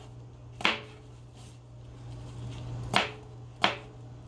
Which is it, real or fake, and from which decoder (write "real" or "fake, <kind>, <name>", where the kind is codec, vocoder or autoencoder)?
real